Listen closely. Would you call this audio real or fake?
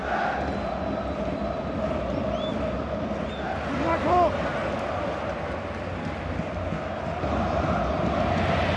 real